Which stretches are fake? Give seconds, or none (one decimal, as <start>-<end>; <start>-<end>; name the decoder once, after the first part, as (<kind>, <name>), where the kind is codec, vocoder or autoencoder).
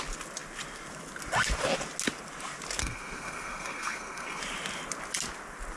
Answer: 2.8-4.4 (codec, SNAC)